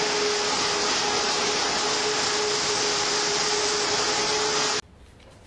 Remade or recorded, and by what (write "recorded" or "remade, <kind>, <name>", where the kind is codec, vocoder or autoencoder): recorded